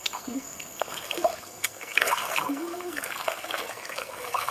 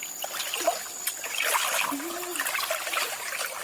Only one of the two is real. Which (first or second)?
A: second